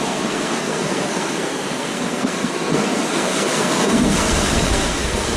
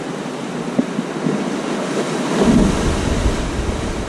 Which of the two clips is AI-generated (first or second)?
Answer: first